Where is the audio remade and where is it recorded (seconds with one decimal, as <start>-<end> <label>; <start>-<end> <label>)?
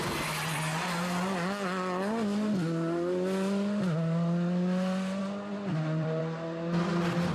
0.0-5.2 recorded; 5.2-6.2 remade; 6.2-7.3 recorded